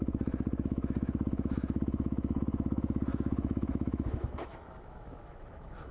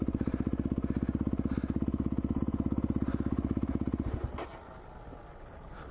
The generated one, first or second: first